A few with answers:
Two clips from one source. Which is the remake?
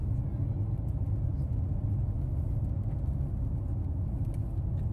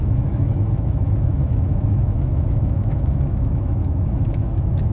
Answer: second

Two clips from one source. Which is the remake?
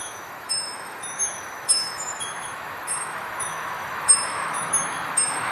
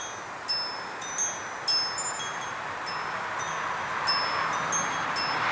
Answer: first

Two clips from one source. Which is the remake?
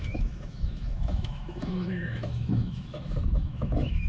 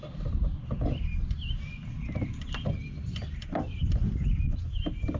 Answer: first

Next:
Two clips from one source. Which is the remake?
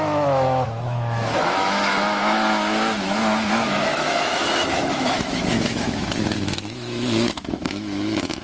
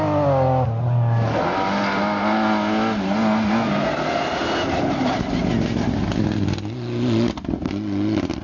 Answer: first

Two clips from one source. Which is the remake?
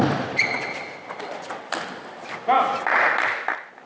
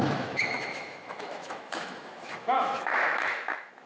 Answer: second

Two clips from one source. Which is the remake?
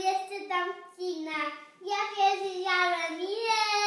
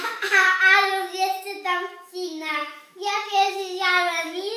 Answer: second